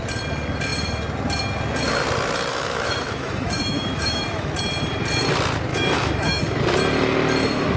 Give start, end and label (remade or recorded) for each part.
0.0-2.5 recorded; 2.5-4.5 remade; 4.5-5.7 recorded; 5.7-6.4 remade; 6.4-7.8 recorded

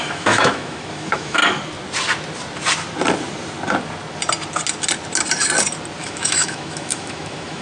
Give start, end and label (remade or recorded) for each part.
0.0-1.4 remade; 1.4-6.0 recorded; 6.0-7.6 remade

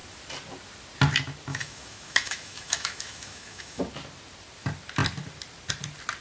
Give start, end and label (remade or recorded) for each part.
0.0-1.5 recorded; 1.5-3.8 remade; 3.8-6.2 recorded

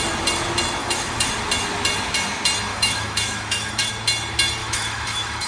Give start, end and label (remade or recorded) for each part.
0.0-0.8 recorded; 0.8-1.3 remade; 1.3-2.7 recorded; 2.7-3.9 remade; 3.9-4.6 recorded; 4.6-5.5 remade